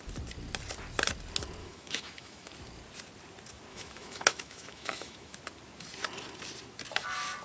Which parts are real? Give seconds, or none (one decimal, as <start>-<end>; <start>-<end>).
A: 0.0-1.6; 2.5-3.7; 5.4-7.4